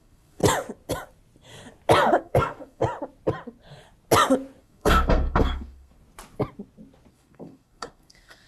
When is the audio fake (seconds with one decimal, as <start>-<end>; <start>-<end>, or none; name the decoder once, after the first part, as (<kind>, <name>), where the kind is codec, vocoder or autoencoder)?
0.0-0.4 (codec, SNAC); 2.2-2.8; 4.6-6.0; 7.1-8.5